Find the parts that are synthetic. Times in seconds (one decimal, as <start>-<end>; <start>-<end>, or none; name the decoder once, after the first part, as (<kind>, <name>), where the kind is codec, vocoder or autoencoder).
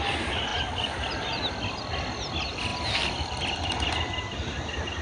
none